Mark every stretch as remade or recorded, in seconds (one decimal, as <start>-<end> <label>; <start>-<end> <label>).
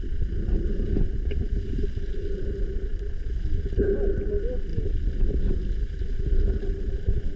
0.0-4.7 recorded; 4.7-5.4 remade; 5.4-7.4 recorded